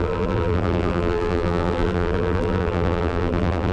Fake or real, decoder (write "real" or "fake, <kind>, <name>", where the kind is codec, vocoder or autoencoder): fake, vocoder, BigVGAN v2